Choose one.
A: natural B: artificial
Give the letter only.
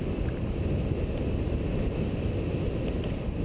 A